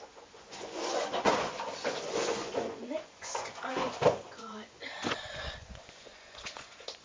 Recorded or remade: remade